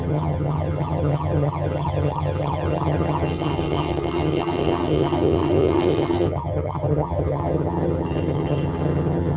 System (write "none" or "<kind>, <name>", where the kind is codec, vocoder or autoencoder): vocoder, HiFi-GAN